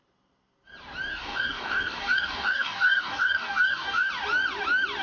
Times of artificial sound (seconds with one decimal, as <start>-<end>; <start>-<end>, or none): 1.1-4.1